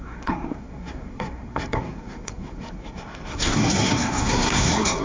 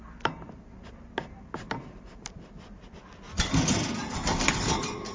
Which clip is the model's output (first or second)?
first